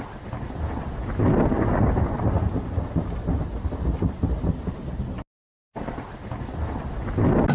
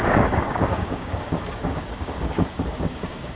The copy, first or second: second